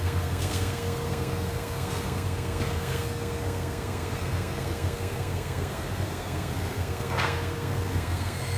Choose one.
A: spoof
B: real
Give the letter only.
A